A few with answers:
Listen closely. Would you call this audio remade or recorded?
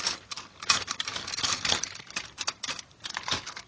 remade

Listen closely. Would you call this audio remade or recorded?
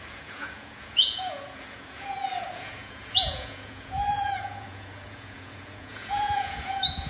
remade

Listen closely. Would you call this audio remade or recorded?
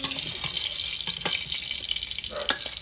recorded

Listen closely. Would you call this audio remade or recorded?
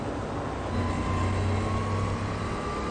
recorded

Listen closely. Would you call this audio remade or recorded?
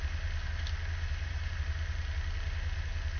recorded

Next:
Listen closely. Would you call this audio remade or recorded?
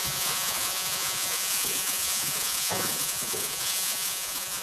remade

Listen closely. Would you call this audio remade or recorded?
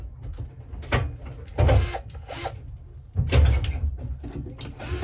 recorded